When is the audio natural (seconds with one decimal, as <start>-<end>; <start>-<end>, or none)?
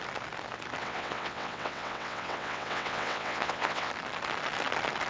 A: 0.0-0.8; 3.9-5.1